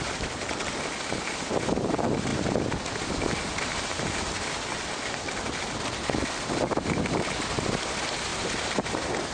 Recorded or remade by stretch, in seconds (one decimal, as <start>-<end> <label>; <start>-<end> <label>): 0.0-9.3 recorded